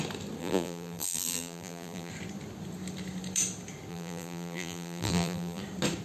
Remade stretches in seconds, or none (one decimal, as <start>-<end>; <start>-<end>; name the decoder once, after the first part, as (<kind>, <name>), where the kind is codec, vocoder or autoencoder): 0.4-2.1 (vocoder, BigVGAN v2); 3.9-5.6